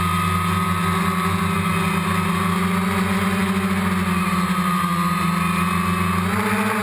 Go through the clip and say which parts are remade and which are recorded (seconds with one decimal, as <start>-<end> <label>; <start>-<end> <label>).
0.0-6.8 recorded